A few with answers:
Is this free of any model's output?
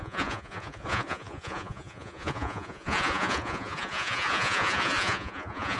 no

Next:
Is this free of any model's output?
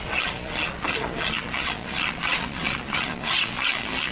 no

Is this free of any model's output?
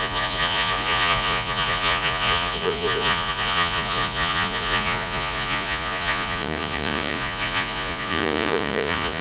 no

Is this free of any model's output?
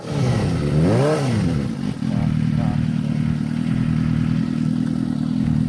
yes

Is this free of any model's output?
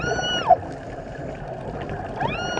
yes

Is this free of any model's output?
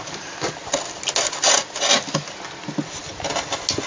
yes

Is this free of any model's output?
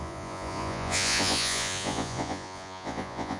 no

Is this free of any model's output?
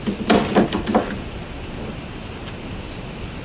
yes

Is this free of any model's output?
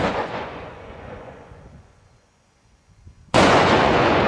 no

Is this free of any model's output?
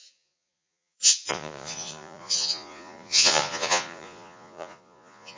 no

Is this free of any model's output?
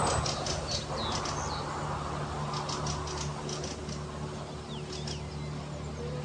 yes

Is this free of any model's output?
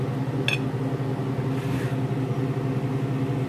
yes